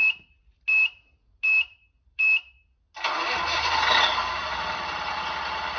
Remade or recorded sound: recorded